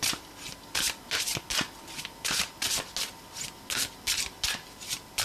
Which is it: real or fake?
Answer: real